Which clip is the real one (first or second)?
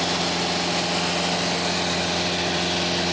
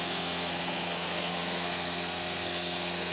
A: first